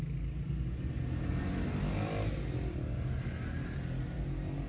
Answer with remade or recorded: recorded